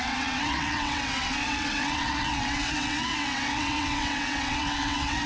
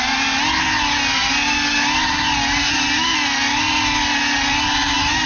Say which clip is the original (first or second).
second